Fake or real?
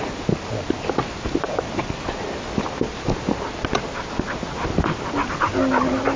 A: real